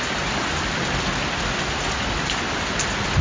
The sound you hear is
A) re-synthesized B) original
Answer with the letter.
B